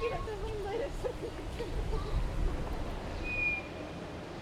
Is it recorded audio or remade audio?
recorded